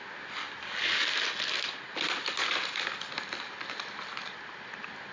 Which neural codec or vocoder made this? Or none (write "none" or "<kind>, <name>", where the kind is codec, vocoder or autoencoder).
none